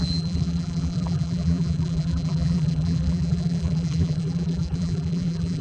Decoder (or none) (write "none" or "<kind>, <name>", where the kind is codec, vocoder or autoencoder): vocoder, BigVGAN v2